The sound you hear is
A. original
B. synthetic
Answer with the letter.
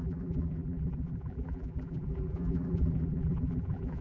B